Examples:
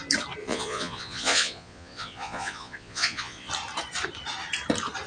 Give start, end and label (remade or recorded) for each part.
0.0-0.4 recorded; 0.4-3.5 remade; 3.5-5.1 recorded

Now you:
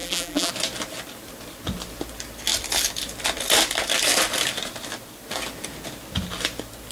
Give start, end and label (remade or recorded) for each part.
0.0-0.5 remade; 0.5-6.9 recorded

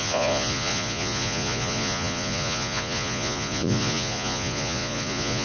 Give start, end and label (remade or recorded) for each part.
0.0-5.4 remade

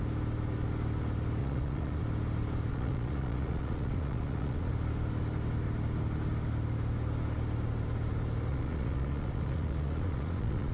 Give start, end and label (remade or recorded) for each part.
0.0-1.4 recorded; 1.4-2.0 remade; 2.0-2.7 recorded; 2.7-4.7 remade; 4.7-8.5 recorded; 8.5-10.7 remade

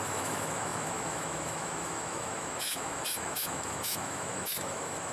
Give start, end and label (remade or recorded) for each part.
0.0-5.1 remade